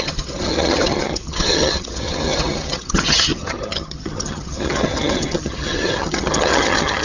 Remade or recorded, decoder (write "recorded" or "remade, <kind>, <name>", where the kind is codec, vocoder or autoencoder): remade, vocoder, HiFi-GAN